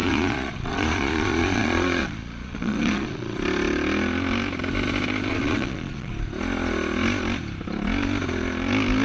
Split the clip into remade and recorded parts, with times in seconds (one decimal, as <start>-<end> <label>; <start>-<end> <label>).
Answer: 0.0-3.4 remade; 3.4-5.3 recorded; 5.3-6.1 remade; 6.1-9.0 recorded

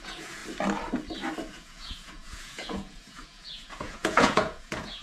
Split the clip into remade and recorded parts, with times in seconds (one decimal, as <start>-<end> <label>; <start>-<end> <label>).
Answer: 0.0-0.4 remade; 0.4-1.5 recorded; 1.5-5.0 remade

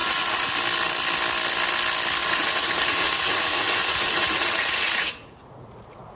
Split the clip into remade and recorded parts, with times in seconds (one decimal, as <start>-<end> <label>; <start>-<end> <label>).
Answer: 0.0-0.5 remade; 0.5-2.2 recorded; 2.2-6.2 remade

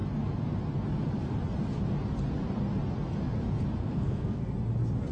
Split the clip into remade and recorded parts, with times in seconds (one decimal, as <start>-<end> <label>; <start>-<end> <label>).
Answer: 0.0-3.8 recorded; 3.8-4.5 remade; 4.5-5.1 recorded

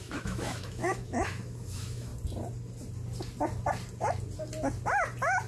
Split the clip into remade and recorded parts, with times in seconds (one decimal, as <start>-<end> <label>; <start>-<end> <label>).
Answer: 0.0-2.1 remade; 2.1-5.5 recorded